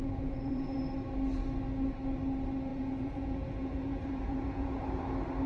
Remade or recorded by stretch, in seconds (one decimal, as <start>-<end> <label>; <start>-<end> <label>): 0.0-0.8 remade; 0.8-2.7 recorded; 2.7-4.8 remade; 4.8-5.5 recorded